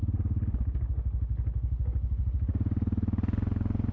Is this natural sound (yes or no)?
yes